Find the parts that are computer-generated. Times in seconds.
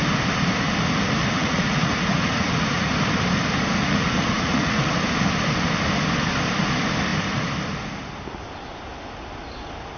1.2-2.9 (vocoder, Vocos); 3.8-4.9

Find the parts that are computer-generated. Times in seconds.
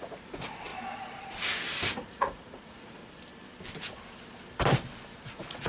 0.0-0.7 (vocoder, Vocos); 1.9-3.0; 5.2-5.7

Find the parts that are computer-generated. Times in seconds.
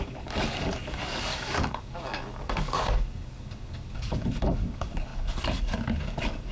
0.0-6.5 (codec, DAC)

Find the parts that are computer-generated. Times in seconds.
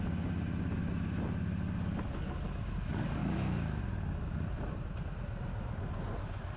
3.2-3.8 (autoencoder, DAC-VAE)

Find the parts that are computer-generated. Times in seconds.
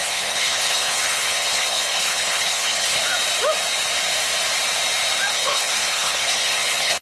0.0-3.0 (codec, HILCodec); 5.3-7.0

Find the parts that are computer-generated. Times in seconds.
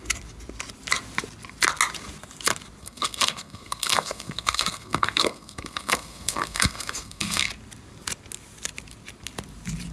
2.8-7.5 (codec, SNAC)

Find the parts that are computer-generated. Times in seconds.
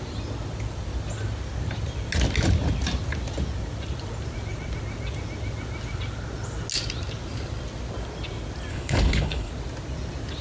8.7-9.5 (codec, HILCodec)